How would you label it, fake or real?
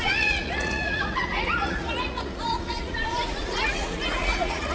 fake